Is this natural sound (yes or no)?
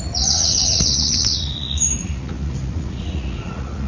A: no